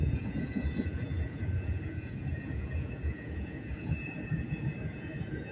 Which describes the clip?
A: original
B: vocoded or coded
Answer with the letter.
B